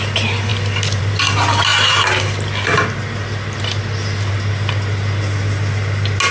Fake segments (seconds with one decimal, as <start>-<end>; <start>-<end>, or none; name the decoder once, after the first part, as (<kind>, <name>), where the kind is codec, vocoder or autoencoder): none